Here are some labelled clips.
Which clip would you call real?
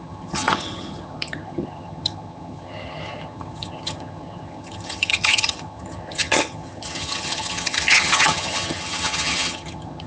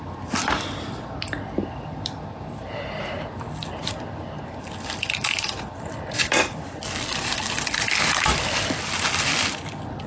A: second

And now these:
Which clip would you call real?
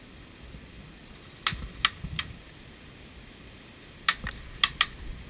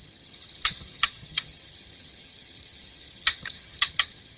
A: first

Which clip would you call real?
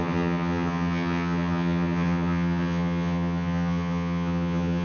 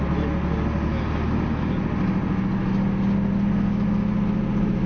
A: second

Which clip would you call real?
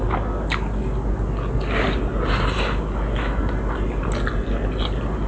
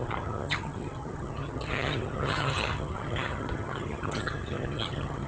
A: first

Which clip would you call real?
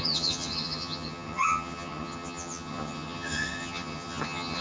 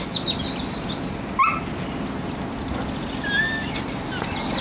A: second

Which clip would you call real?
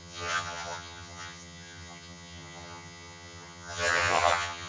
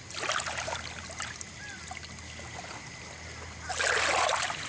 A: second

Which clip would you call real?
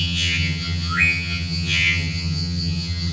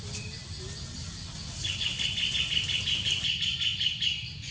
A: second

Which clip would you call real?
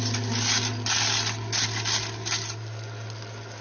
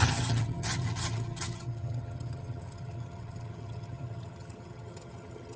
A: first